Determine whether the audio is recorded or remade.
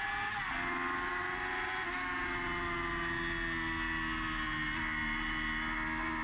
recorded